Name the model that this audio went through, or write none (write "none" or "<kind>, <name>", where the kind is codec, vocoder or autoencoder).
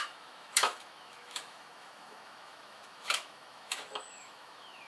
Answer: autoencoder, DAC-VAE